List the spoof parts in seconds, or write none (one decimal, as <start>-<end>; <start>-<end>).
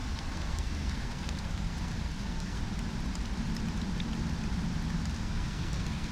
0.0-2.6; 5.2-6.1